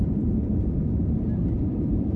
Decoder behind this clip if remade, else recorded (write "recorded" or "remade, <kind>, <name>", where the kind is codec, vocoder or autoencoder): remade, vocoder, BigVGAN v2